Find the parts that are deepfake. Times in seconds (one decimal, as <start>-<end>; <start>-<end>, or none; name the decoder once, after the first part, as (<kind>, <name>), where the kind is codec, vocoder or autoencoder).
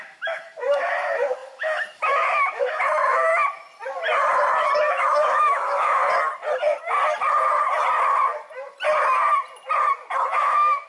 0.0-3.3 (autoencoder, DAC-VAE); 4.9-6.0; 10.3-10.9